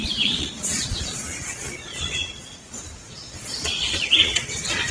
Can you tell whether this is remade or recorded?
remade